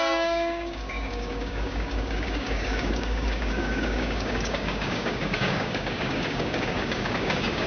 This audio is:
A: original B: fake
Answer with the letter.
B